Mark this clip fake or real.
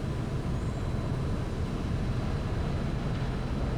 real